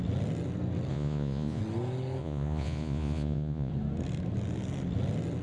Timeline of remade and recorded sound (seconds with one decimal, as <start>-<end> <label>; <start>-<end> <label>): 0.0-0.9 recorded; 0.9-1.6 remade; 1.6-2.2 recorded; 2.2-3.7 remade; 3.7-5.4 recorded